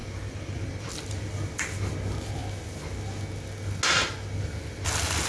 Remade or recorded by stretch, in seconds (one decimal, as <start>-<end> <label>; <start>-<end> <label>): 0.0-0.9 remade; 0.9-5.3 recorded